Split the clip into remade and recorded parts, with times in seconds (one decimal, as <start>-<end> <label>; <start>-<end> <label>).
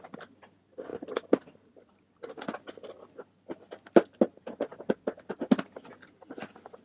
0.0-6.8 recorded